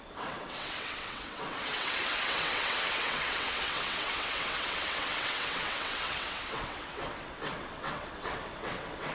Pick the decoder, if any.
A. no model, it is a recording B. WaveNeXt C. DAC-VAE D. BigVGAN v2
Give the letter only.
B